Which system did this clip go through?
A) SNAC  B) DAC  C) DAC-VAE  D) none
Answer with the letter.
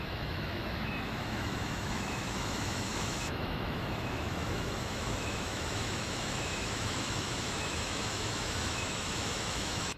C